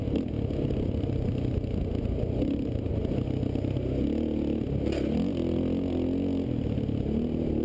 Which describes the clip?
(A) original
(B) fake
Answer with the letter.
A